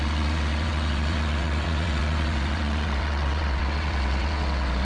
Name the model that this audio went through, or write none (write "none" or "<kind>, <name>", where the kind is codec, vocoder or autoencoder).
vocoder, WaveNeXt